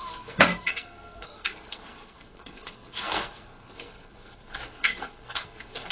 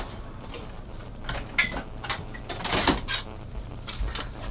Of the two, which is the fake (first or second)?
first